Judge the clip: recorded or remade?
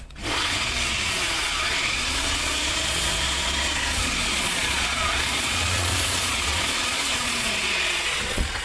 remade